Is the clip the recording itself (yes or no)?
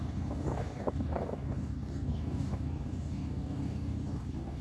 no